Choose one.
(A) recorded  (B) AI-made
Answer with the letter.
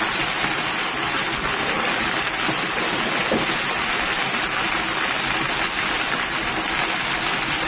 A